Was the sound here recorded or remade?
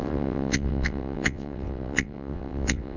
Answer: remade